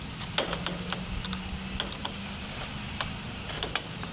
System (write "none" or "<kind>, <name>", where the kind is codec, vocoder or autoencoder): none